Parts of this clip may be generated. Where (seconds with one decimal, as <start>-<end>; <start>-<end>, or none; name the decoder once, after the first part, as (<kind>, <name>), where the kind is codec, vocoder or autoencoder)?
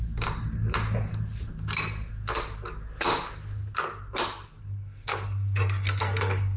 4.6-6.6 (codec, SNAC)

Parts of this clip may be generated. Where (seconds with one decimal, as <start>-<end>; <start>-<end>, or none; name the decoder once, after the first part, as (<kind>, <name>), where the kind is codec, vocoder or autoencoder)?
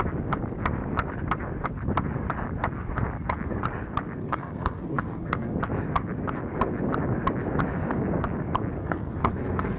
4.2-5.6 (codec, SNAC); 8.8-9.8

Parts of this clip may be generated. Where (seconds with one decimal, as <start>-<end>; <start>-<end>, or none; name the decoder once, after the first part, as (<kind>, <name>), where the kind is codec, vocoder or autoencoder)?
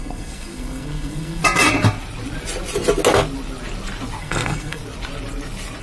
0.0-1.4 (codec, SNAC); 4.2-4.8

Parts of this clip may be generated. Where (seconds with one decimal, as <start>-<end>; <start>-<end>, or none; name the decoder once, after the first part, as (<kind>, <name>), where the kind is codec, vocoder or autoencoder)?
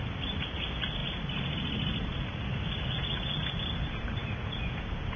none